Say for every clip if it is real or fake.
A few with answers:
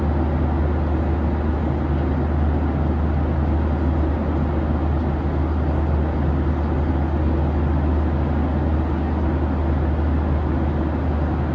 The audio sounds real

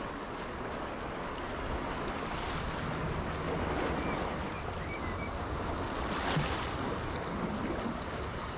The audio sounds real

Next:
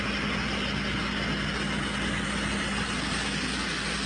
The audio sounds real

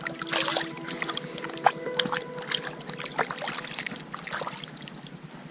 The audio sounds real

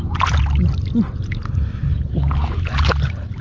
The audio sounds real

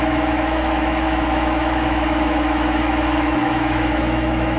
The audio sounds fake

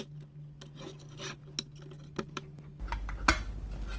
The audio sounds real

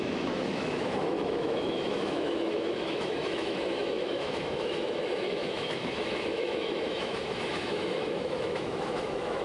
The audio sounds fake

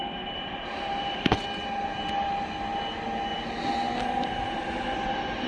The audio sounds real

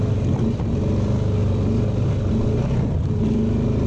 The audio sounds real